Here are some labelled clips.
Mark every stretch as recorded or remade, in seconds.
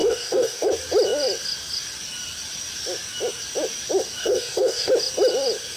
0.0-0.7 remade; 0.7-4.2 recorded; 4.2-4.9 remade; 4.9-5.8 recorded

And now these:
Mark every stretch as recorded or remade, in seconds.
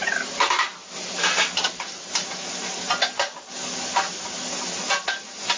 0.0-5.6 recorded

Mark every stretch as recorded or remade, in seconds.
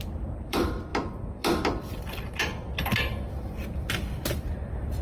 0.0-5.0 remade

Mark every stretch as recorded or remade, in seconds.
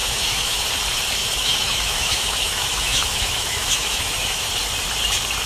0.0-0.7 remade; 0.7-1.2 recorded; 1.2-4.5 remade; 4.5-5.5 recorded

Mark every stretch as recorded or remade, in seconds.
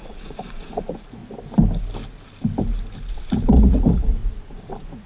0.0-1.2 remade; 1.2-3.1 recorded; 3.1-5.1 remade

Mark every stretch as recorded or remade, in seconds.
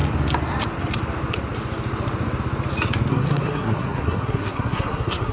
0.0-3.1 recorded; 3.1-5.3 remade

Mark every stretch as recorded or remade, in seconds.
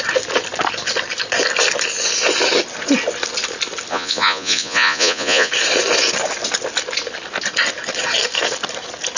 0.0-3.9 recorded; 3.9-5.5 remade; 5.5-9.2 recorded